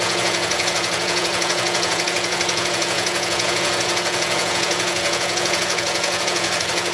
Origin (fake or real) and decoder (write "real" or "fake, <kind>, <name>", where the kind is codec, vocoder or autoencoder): fake, vocoder, Vocos